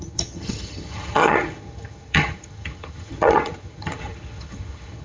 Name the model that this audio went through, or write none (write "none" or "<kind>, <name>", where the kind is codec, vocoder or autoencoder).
vocoder, HiFi-GAN